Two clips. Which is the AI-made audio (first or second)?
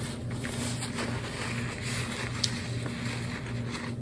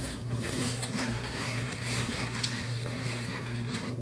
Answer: second